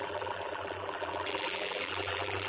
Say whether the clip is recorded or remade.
remade